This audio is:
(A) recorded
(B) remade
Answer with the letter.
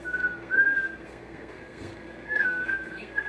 B